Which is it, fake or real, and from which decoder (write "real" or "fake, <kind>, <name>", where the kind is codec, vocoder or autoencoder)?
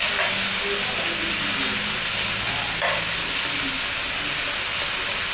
real